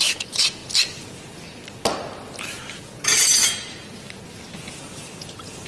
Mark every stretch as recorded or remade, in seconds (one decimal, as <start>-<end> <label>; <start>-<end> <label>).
0.0-0.6 remade; 0.6-2.7 recorded; 2.7-3.4 remade; 3.4-5.2 recorded; 5.2-5.7 remade